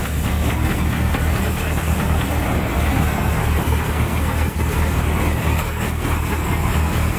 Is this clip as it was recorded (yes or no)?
no